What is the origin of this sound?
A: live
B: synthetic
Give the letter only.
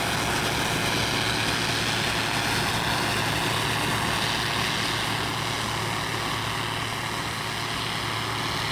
A